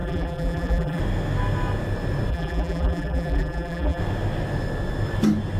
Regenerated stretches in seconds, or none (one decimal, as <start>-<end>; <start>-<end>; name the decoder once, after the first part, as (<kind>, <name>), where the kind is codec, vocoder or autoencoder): 0.0-1.0 (vocoder, BigVGAN v2); 2.3-4.0